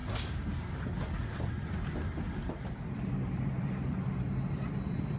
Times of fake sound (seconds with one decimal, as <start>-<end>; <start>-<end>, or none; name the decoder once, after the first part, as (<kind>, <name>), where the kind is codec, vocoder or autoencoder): none